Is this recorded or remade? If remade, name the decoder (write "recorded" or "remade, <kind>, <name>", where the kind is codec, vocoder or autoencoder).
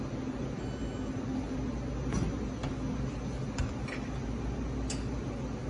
recorded